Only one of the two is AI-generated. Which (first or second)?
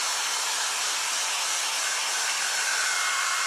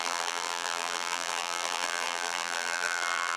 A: second